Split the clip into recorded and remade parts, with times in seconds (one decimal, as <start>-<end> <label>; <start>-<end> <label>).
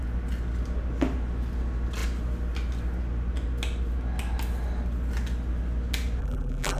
0.0-6.2 recorded; 6.2-6.8 remade